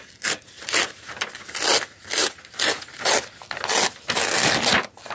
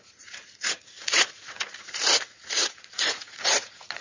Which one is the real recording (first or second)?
first